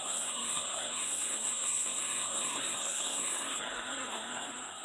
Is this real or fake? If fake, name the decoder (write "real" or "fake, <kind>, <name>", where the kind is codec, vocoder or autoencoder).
fake, codec, SNAC